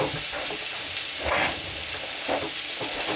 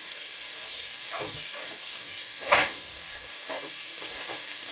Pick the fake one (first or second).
second